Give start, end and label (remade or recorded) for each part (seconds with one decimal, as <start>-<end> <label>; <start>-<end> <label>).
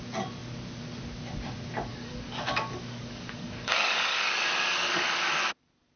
0.0-1.9 recorded; 1.9-5.5 remade; 5.5-6.0 recorded